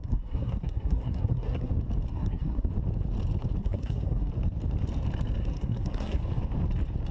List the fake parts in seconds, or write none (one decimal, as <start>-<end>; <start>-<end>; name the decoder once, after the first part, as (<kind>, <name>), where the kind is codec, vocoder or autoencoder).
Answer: 0.0-1.7 (codec, SNAC); 2.1-2.7; 3.6-4.3; 5.4-6.2